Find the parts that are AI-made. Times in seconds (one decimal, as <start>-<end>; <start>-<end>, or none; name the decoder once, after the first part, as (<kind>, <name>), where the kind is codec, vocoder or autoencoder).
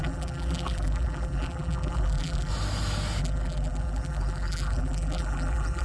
0.0-2.5 (vocoder, BigVGAN v2); 3.2-5.8